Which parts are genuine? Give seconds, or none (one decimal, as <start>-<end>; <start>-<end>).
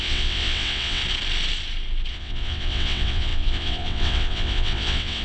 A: 1.0-2.1